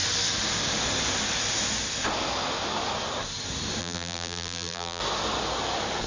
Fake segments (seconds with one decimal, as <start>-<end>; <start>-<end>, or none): 3.8-5.0